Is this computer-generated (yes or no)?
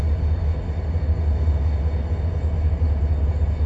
no